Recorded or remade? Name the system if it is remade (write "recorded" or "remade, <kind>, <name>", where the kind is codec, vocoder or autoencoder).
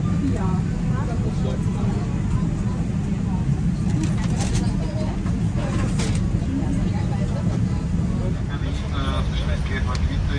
recorded